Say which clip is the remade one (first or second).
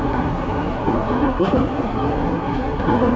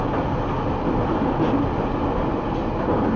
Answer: first